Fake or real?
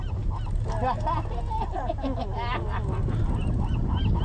real